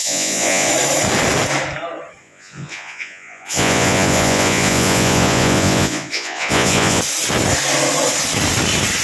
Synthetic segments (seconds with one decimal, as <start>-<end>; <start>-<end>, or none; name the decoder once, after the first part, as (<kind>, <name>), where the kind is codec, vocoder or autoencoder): 0.0-0.7 (vocoder, Vocos); 2.2-7.0